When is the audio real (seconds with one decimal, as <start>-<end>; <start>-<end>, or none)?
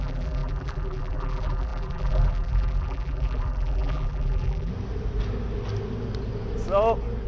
4.7-7.3